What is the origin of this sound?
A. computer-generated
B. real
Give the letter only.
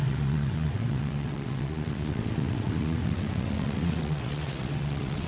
A